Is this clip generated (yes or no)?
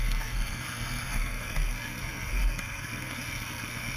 yes